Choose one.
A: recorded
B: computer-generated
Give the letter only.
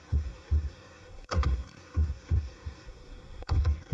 B